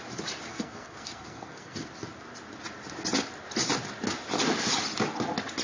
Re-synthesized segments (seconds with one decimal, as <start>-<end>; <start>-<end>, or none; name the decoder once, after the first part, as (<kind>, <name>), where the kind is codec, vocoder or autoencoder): 0.5-1.9 (codec, SNAC)